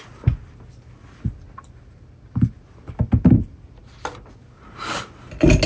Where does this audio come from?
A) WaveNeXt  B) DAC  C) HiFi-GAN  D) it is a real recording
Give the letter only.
D